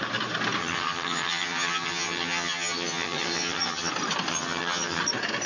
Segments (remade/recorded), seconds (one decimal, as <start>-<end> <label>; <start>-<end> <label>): 0.0-0.6 recorded; 0.6-3.9 remade; 3.9-4.3 recorded; 4.3-5.0 remade; 5.0-5.5 recorded

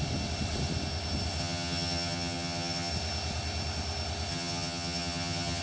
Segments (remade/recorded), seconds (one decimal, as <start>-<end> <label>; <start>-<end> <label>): 0.0-1.4 recorded; 1.4-2.9 remade; 2.9-4.3 recorded; 4.3-5.6 remade

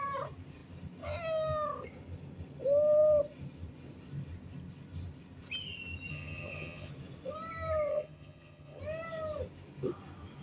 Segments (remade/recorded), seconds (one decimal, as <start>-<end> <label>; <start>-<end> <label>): 0.0-6.1 recorded; 6.1-6.9 remade; 6.9-7.9 recorded; 7.9-8.8 remade; 8.8-10.4 recorded

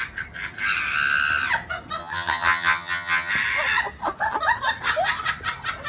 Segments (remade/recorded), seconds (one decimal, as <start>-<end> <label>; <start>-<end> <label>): 0.0-2.0 recorded; 2.0-3.3 remade; 3.3-5.9 recorded